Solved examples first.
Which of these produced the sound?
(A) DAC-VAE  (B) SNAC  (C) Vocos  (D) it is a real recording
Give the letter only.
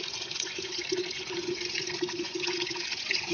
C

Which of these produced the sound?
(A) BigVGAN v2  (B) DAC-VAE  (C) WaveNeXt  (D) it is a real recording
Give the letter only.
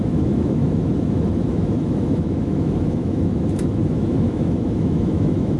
B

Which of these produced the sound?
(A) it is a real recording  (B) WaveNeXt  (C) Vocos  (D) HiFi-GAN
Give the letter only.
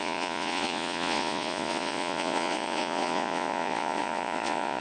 C